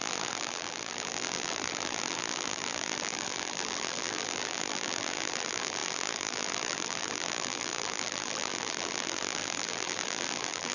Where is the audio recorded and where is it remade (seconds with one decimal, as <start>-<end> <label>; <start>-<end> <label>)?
0.0-10.7 remade

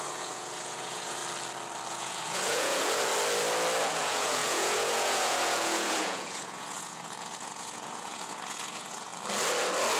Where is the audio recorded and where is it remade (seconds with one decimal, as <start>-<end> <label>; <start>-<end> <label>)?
0.0-1.2 remade; 1.2-1.9 recorded; 1.9-3.1 remade; 3.1-3.8 recorded; 3.8-9.1 remade; 9.1-10.0 recorded